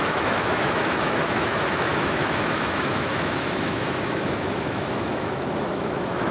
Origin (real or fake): fake